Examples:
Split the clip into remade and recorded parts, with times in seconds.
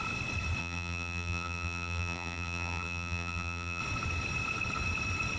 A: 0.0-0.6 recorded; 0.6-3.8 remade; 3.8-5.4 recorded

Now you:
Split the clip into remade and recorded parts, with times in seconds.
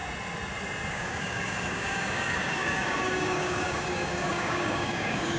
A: 0.0-0.9 recorded; 0.9-5.4 remade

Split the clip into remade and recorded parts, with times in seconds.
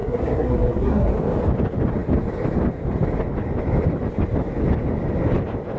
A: 0.0-1.1 remade; 1.1-5.8 recorded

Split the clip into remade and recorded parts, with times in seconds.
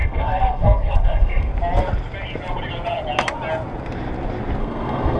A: 0.0-1.5 remade; 1.5-4.6 recorded; 4.6-5.2 remade